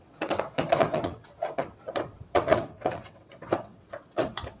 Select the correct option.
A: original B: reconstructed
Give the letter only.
B